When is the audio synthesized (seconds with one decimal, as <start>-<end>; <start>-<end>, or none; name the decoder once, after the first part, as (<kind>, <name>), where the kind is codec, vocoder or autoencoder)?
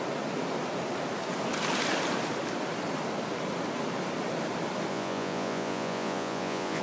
4.9-6.8 (vocoder, Vocos)